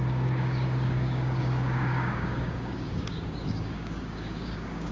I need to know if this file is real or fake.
fake